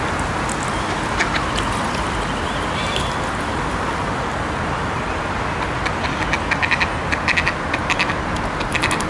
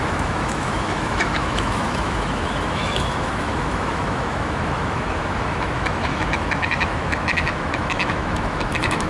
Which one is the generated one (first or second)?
second